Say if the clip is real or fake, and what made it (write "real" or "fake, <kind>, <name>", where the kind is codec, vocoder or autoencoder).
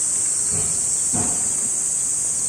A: real